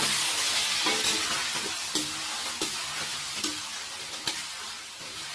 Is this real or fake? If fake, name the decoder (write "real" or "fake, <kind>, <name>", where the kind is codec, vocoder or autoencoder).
real